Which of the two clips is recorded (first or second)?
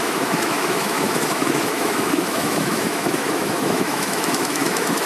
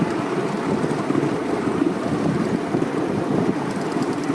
second